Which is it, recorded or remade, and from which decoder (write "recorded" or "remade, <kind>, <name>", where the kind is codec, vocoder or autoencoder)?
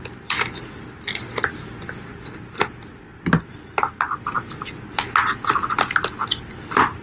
recorded